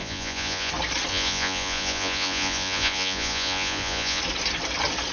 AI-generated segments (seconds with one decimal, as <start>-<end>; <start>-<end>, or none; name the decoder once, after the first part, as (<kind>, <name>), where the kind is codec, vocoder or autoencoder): 0.0-0.7 (vocoder, Vocos); 1.1-4.2

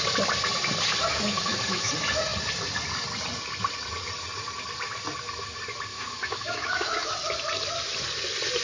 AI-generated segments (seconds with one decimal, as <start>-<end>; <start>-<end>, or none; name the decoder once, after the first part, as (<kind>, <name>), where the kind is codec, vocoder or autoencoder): 1.1-1.9 (autoencoder, DAC-VAE); 5.9-7.1

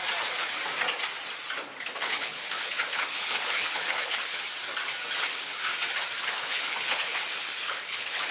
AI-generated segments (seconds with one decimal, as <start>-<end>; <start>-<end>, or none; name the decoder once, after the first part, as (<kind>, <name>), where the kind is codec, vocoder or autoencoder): 1.8-4.4 (codec, HILCodec); 5.2-5.7; 6.2-8.3

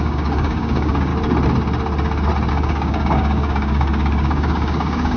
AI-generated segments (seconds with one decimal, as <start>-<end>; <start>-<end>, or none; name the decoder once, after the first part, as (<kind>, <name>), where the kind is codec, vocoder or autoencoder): 0.0-1.1 (codec, DAC); 2.5-5.2

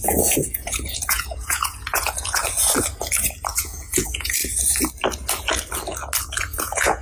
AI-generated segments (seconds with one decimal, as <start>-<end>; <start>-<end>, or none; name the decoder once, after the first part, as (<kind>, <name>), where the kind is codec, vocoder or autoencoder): 0.0-2.4 (vocoder, Vocos); 3.6-4.4; 6.4-7.0

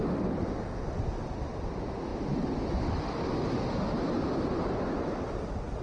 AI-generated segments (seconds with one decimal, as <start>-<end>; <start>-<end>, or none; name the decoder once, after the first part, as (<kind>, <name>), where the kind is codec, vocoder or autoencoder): none

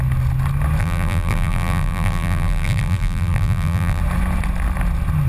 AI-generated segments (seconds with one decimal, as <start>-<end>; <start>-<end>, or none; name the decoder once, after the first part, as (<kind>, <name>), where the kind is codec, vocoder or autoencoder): 0.8-4.0 (vocoder, BigVGAN v2)